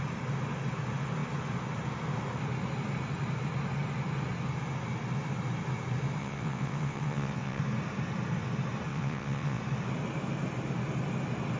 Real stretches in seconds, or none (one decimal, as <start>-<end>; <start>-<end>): 0.0-6.2; 7.6-8.9; 9.6-11.6